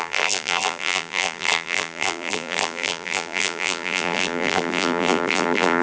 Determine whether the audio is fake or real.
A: fake